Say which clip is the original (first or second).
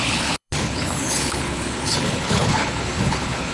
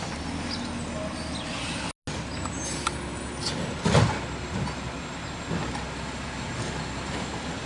second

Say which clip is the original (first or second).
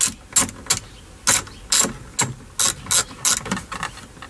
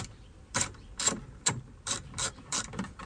first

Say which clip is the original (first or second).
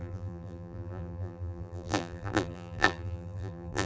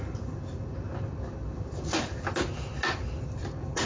second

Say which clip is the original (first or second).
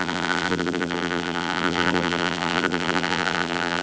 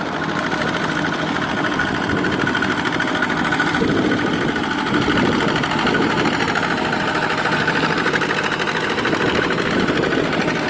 second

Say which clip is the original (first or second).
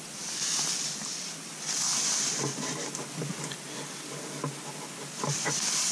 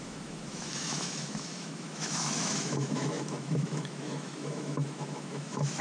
first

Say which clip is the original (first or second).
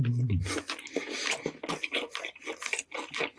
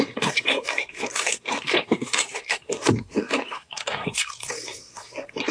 first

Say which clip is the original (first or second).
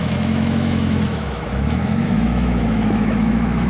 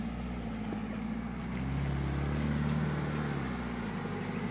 second